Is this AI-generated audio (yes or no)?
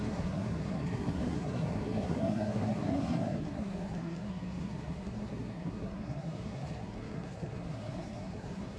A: yes